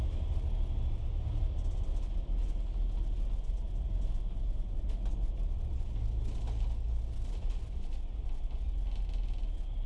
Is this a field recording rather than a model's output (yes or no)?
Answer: yes